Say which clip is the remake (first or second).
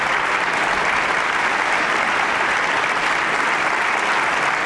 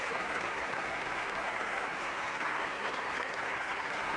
second